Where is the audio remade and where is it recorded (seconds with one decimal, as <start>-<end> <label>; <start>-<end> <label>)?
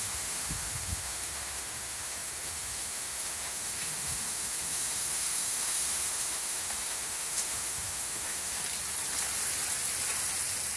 0.0-8.6 remade; 8.6-10.8 recorded